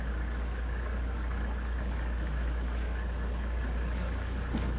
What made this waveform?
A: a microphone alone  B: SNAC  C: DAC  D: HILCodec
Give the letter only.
C